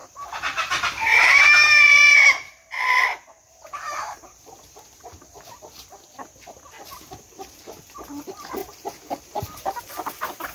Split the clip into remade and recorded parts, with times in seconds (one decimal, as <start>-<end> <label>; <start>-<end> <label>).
0.0-4.4 remade; 4.4-8.6 recorded; 8.6-9.8 remade; 9.8-10.5 recorded